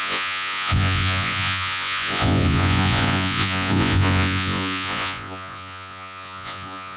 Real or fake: fake